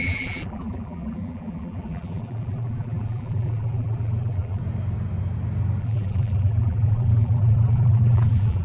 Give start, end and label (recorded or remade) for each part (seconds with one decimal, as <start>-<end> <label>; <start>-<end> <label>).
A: 0.0-4.6 remade; 4.6-5.8 recorded; 5.8-8.6 remade